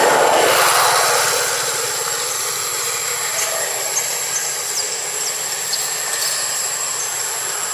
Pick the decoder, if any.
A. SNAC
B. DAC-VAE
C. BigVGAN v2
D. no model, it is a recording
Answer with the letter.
D